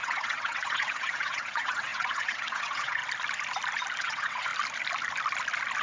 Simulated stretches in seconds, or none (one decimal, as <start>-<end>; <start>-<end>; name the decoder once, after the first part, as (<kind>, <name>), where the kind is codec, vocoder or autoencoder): 0.0-3.0 (vocoder, WaveNeXt); 4.0-4.5